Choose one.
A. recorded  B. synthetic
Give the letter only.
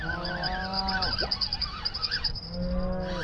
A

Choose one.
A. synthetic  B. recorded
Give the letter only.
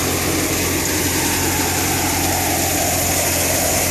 B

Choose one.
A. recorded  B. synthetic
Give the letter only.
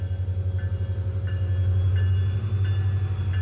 A